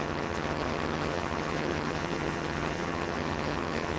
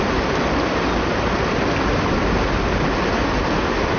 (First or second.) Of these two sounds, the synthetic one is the first